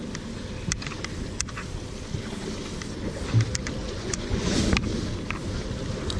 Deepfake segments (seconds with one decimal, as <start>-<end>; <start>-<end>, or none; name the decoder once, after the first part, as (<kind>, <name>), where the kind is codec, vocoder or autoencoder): 3.8-4.6 (vocoder, Vocos)